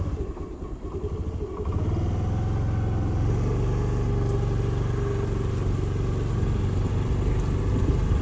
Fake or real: real